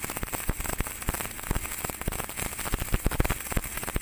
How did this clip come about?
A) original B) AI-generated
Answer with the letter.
A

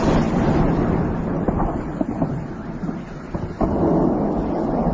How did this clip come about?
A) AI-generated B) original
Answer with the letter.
B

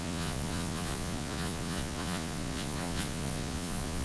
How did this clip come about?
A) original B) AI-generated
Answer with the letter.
B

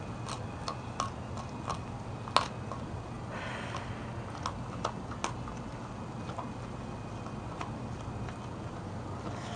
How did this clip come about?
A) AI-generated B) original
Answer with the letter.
B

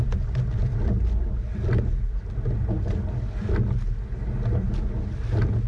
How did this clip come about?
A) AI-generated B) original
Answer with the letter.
B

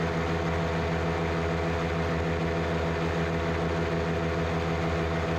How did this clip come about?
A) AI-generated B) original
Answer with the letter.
B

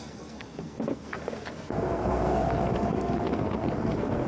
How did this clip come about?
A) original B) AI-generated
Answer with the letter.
B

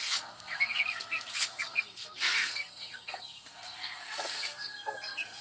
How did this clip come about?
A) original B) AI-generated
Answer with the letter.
B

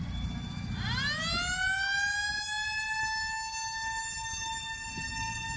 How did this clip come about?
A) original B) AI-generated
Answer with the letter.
A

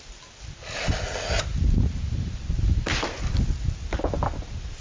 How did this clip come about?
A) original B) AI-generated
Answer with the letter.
A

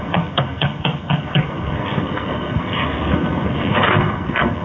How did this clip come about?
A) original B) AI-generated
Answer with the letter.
B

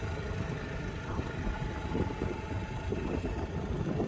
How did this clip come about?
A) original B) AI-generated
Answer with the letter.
A